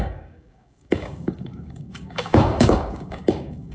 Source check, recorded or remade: remade